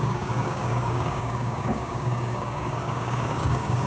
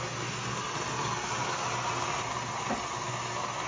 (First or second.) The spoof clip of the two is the first